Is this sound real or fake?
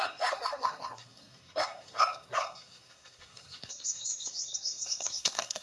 fake